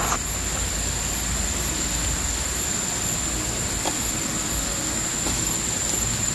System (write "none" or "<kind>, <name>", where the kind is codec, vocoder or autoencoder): none